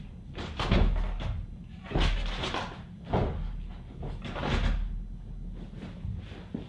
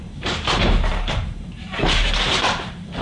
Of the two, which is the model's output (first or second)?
second